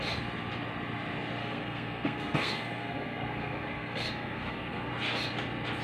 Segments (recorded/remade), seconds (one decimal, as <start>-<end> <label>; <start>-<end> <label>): 0.0-1.4 recorded; 1.4-4.9 remade; 4.9-5.8 recorded